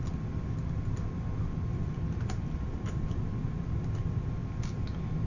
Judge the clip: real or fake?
real